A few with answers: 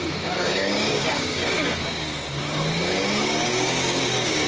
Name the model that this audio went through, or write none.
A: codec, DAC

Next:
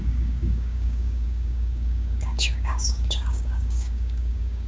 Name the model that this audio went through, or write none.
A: codec, DAC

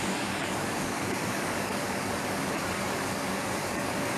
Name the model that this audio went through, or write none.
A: codec, DAC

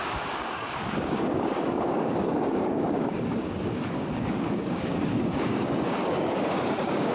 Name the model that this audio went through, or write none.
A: codec, DAC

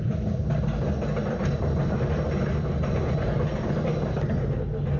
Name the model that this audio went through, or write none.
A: none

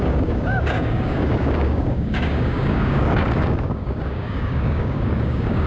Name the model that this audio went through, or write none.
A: codec, DAC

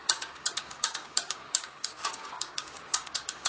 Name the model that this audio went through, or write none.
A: codec, DAC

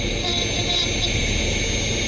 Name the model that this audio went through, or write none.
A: none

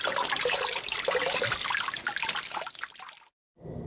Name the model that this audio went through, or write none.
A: none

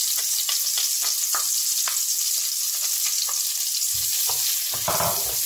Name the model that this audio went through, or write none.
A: none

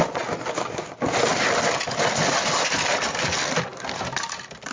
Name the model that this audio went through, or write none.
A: none